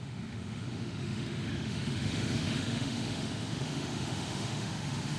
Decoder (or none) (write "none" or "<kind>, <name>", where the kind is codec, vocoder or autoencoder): autoencoder, DAC-VAE